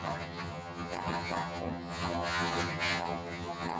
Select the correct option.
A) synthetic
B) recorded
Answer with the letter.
A